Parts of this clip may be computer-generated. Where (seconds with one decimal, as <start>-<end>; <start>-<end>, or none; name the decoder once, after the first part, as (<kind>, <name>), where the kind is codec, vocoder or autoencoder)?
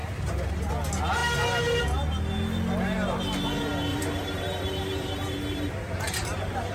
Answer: 0.0-0.7 (vocoder, BigVGAN v2); 3.9-6.7